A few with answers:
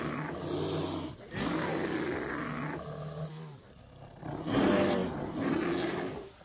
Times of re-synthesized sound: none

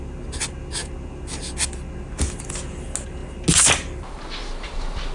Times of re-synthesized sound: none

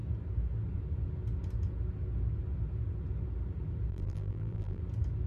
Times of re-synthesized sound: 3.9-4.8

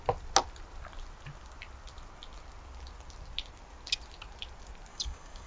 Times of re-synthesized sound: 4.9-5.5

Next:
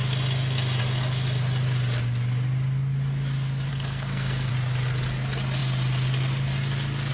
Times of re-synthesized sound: 3.7-4.5

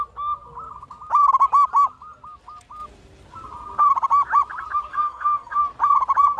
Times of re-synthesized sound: 4.9-5.6